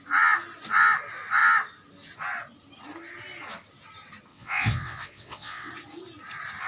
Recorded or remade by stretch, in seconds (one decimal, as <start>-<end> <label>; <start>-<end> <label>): 0.0-4.3 recorded; 4.3-5.7 remade; 5.7-6.7 recorded